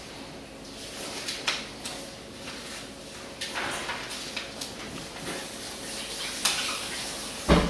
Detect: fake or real real